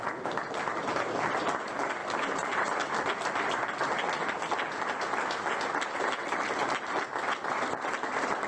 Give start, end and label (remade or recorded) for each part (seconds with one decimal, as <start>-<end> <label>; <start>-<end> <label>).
0.0-8.5 recorded